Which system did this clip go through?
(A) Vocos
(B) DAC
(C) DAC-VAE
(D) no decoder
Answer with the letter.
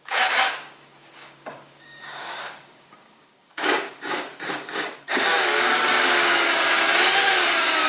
B